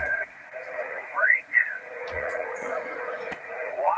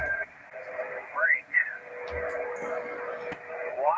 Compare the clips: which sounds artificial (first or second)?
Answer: first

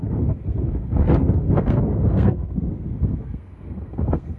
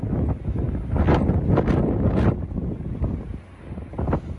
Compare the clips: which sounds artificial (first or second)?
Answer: first